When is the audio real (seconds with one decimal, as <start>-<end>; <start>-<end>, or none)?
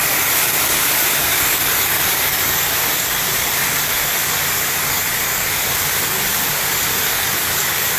none